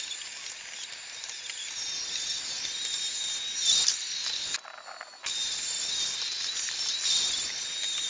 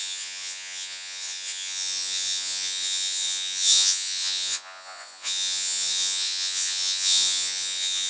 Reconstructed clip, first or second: second